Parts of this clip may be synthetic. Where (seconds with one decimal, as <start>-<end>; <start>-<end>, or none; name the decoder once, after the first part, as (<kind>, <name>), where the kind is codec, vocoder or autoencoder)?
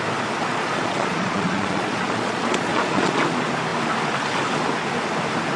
0.4-3.2 (vocoder, Vocos)